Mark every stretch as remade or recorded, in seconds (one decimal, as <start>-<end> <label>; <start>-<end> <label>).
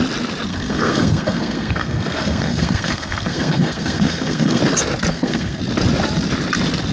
0.0-0.5 recorded; 0.5-4.6 remade; 4.6-5.1 recorded; 5.1-5.6 remade; 5.6-6.9 recorded